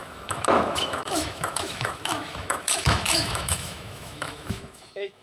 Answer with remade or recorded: remade